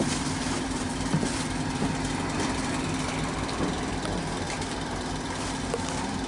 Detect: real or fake fake